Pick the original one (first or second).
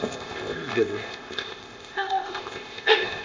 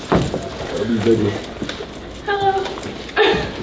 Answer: second